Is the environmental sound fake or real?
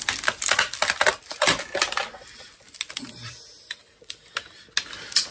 real